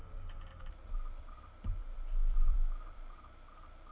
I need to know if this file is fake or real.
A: fake